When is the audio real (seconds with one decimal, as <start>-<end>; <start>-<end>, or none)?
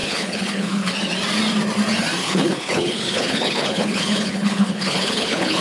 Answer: 0.9-2.2